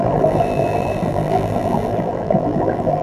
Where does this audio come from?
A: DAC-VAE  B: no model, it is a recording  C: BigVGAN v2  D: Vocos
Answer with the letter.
C